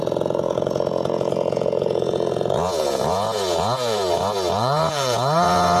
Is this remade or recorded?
remade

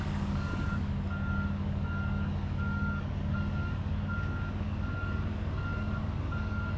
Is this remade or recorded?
remade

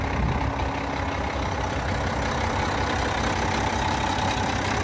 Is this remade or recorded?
recorded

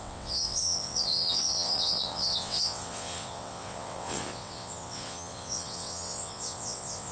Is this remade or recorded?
remade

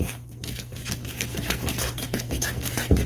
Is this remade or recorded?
remade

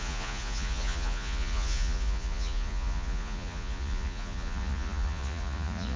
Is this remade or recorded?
remade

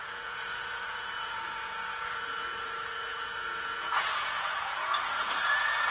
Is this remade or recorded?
remade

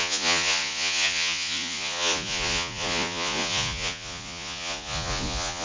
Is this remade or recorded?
remade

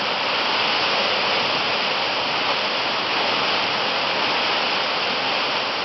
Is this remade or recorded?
recorded